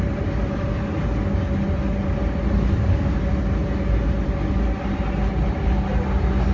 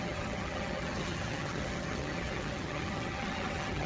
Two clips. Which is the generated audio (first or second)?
second